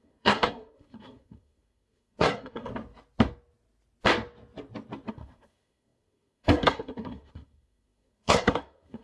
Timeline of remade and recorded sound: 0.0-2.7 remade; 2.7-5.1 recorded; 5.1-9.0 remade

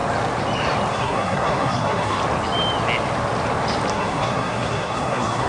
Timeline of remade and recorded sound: 0.0-0.9 recorded; 0.9-2.2 remade; 2.2-3.9 recorded; 3.9-5.5 remade

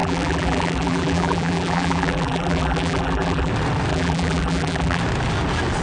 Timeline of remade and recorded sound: 0.0-3.5 remade; 3.5-3.9 recorded; 3.9-5.0 remade; 5.0-5.8 recorded

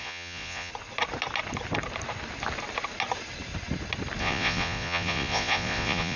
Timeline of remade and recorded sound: 0.0-0.7 remade; 0.7-4.2 recorded; 4.2-6.2 remade

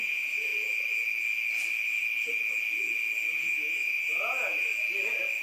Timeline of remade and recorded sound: 0.0-0.5 remade; 0.5-3.3 recorded; 3.3-4.7 remade; 4.7-5.4 recorded

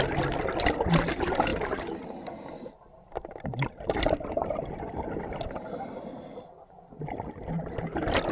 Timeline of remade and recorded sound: 0.0-8.3 recorded

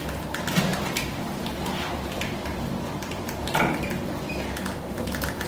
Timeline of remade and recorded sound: 0.0-0.7 recorded; 0.7-4.0 remade; 4.0-5.5 recorded